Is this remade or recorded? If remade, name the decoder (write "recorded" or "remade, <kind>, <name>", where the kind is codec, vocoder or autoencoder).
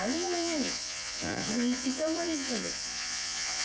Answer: remade, vocoder, Vocos